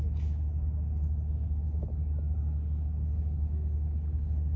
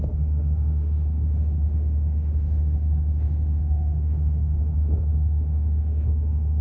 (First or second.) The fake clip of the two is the second